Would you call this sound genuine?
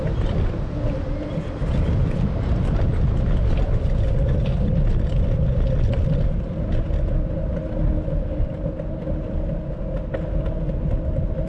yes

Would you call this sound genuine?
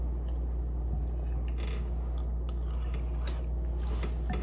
yes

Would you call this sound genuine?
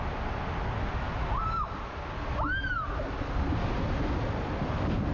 yes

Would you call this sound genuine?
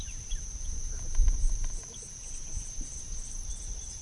no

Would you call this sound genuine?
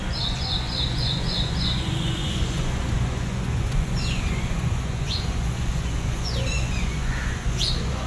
no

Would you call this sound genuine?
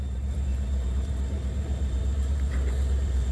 no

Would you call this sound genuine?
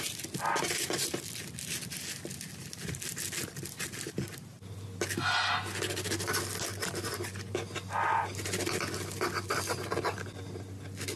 yes